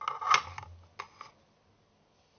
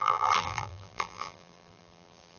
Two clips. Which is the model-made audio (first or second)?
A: second